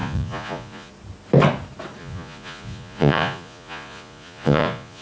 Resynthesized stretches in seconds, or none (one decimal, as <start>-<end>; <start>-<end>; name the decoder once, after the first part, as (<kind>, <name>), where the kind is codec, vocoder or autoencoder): 0.0-0.9 (vocoder, Vocos); 2.0-5.0

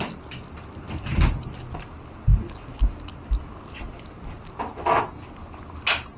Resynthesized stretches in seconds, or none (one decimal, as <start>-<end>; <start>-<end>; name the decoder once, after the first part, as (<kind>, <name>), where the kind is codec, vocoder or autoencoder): none

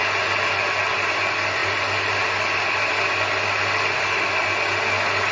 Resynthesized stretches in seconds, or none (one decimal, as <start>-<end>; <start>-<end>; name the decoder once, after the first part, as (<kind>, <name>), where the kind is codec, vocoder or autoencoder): none

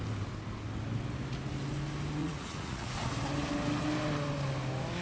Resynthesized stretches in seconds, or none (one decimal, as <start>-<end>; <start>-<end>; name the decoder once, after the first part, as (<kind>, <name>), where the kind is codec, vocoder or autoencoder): 2.2-2.9 (vocoder, Vocos)

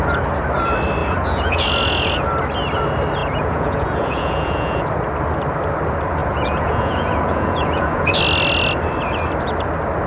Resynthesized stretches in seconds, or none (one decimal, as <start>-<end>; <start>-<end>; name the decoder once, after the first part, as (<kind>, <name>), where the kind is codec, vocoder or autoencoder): 1.0-2.2 (vocoder, Vocos); 3.2-4.9; 6.2-8.2

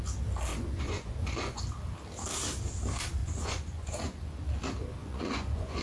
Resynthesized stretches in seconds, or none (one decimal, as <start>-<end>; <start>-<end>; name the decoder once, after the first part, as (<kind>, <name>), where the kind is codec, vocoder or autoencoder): 0.5-1.6 (vocoder, Vocos); 3.2-4.4; 5.0-5.8